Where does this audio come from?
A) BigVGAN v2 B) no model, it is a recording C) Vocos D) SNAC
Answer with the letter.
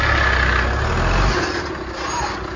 B